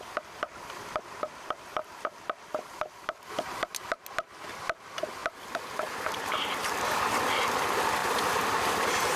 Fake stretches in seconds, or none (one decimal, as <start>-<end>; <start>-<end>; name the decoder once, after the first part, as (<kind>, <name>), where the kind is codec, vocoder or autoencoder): none